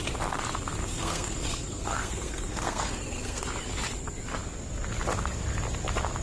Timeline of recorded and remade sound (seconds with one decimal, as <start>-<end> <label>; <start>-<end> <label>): 0.0-0.8 recorded; 0.8-3.4 remade; 3.4-6.2 recorded